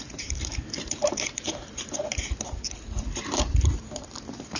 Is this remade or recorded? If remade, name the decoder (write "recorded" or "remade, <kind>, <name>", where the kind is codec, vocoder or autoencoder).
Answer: remade, vocoder, BigVGAN v2